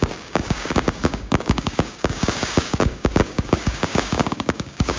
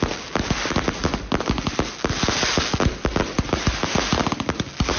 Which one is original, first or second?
second